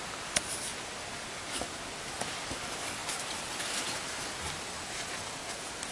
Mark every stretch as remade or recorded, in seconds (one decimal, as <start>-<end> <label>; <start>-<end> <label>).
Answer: 0.0-3.0 recorded; 3.0-3.6 remade; 3.6-5.9 recorded